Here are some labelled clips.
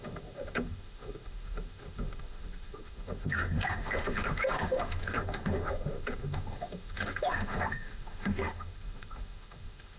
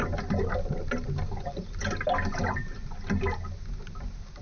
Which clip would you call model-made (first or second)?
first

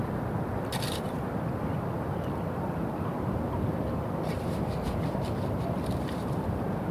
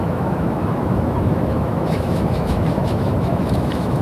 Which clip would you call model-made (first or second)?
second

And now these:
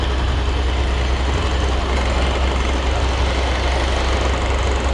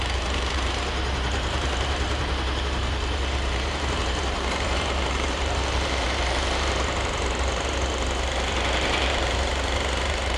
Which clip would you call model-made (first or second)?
second